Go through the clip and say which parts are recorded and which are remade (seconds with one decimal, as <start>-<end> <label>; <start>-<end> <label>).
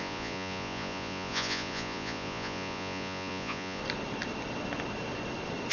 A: 0.0-3.8 remade; 3.8-5.7 recorded